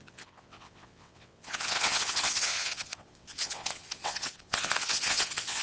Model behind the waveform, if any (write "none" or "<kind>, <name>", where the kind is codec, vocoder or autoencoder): vocoder, WaveNeXt